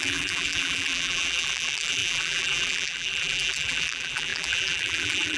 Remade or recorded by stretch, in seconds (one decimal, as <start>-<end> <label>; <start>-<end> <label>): 0.0-5.4 remade